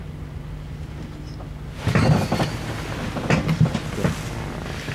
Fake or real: real